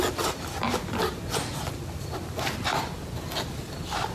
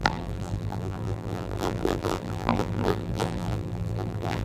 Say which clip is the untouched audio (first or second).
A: first